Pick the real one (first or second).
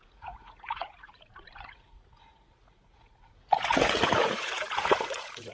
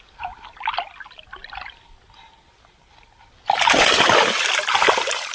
second